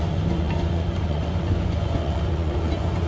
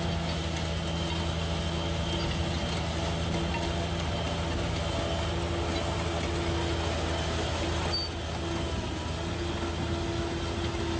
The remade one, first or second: first